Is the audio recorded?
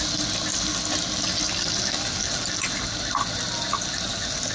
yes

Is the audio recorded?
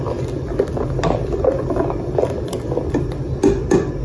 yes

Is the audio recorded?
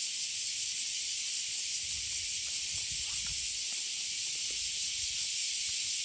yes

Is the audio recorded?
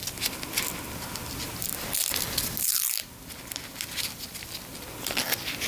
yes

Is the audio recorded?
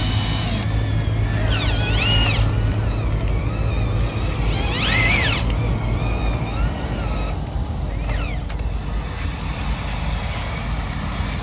yes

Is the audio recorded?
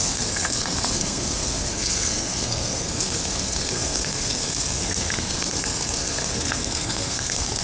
no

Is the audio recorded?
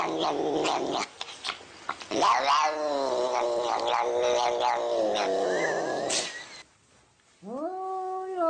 yes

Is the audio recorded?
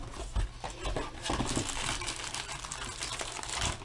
yes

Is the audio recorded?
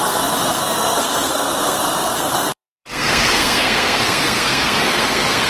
no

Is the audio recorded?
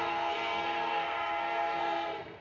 no